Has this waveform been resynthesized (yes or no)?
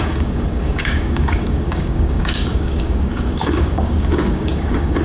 yes